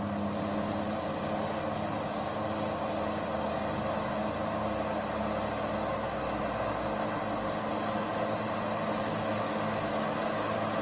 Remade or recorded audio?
recorded